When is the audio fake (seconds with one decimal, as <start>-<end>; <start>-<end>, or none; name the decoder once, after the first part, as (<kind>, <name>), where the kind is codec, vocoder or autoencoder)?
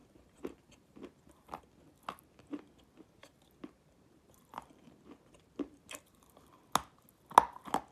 0.0-1.6 (vocoder, BigVGAN v2); 3.2-6.5